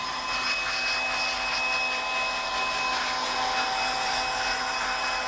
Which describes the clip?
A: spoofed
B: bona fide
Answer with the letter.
B